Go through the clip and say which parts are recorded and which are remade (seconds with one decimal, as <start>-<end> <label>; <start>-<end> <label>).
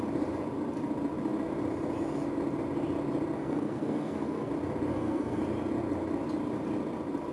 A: 0.0-3.4 recorded; 3.4-4.5 remade; 4.5-4.9 recorded; 4.9-5.4 remade; 5.4-7.3 recorded